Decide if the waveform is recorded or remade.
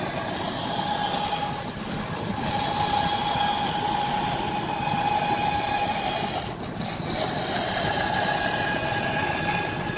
recorded